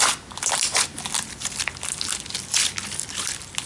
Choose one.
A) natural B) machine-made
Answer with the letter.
A